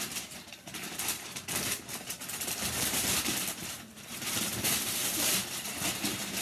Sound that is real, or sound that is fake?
fake